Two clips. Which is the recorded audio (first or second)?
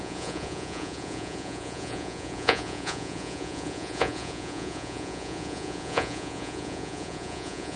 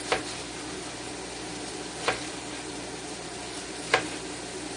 second